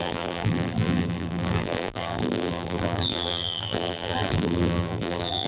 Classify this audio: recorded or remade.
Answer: remade